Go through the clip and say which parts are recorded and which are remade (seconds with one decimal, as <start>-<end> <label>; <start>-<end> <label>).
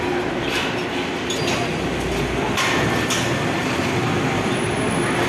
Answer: 0.0-0.8 remade; 0.8-3.6 recorded; 3.6-4.0 remade; 4.0-5.3 recorded